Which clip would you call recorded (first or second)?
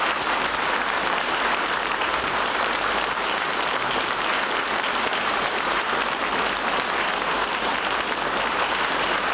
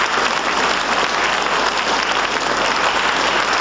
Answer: second